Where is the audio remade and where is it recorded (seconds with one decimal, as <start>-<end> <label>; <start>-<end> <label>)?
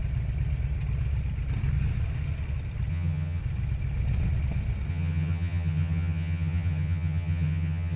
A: 0.0-2.9 recorded; 2.9-3.4 remade; 3.4-4.9 recorded; 4.9-8.0 remade